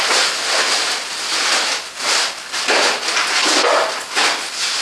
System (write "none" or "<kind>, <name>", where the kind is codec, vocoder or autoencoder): none